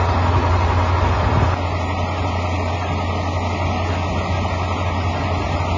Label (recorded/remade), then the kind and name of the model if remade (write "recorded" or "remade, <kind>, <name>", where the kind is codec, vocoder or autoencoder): recorded